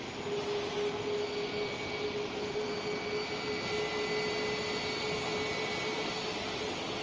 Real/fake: real